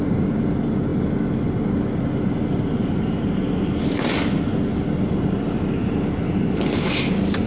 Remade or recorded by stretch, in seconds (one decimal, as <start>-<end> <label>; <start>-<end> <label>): 0.0-7.5 recorded